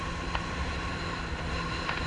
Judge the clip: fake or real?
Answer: fake